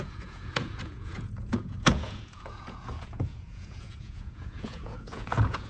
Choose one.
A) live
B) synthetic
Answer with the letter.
B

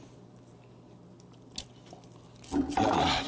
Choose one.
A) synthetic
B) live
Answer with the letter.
B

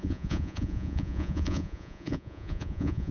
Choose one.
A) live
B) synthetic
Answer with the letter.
B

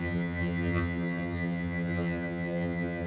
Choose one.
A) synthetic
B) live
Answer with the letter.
A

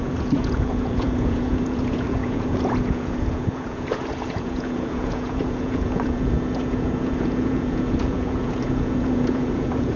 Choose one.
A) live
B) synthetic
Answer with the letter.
B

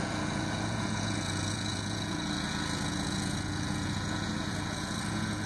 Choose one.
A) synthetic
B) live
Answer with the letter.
A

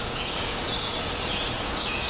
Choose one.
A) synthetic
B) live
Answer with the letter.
A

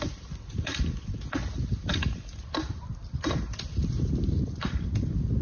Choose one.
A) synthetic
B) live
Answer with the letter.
B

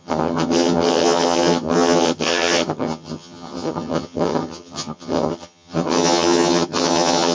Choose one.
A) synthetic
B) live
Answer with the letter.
A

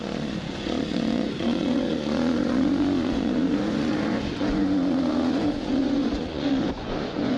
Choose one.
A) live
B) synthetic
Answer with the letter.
B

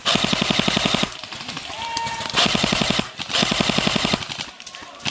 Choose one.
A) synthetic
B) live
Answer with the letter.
B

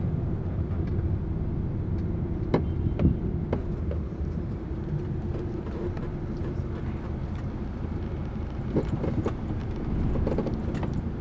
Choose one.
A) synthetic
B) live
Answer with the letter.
B